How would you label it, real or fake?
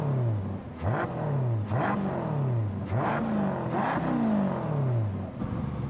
real